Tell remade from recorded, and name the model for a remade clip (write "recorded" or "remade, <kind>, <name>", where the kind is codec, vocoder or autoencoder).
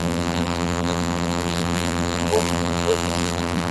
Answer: remade, vocoder, BigVGAN v2